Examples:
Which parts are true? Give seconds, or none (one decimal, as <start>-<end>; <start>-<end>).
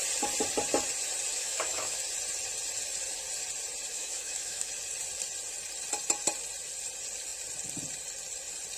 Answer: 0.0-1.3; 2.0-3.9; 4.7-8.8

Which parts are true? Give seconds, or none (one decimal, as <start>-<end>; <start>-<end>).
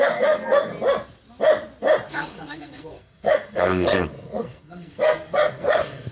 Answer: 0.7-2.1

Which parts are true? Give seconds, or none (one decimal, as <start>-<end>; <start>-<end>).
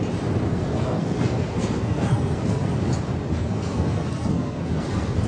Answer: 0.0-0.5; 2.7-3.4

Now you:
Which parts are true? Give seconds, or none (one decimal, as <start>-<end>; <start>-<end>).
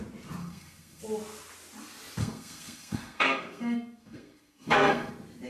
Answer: 0.0-0.4; 1.0-2.2; 5.1-5.5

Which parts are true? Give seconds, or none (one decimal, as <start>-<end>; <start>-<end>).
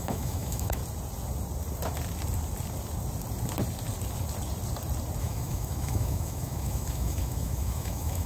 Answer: 0.8-5.2